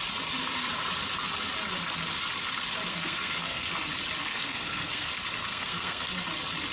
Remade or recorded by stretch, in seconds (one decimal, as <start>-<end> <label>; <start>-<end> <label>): 0.0-2.9 recorded; 2.9-3.7 remade; 3.7-4.3 recorded; 4.3-5.1 remade; 5.1-5.5 recorded; 5.5-6.1 remade; 6.1-6.7 recorded